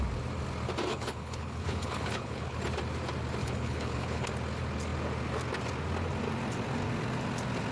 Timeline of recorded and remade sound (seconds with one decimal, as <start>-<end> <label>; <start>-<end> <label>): 0.0-0.9 recorded; 0.9-2.6 remade; 2.6-3.4 recorded; 3.4-4.3 remade; 4.3-7.7 recorded